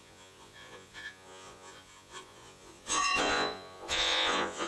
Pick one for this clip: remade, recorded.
remade